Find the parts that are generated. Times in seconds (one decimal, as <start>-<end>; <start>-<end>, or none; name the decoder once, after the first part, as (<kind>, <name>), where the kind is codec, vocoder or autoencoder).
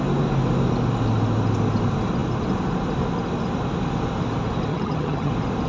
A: 4.7-5.3 (vocoder, HiFi-GAN)